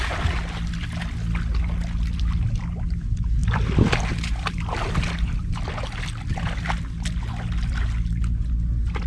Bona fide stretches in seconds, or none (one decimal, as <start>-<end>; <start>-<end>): 0.0-9.1